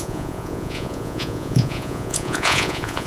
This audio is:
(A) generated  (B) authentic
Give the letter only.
A